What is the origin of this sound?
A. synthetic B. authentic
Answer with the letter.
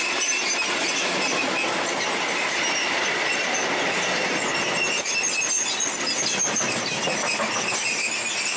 B